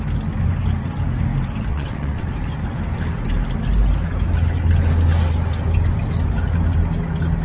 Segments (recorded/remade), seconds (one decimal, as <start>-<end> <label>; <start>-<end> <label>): 0.0-1.7 recorded; 1.7-2.3 remade; 2.3-7.4 recorded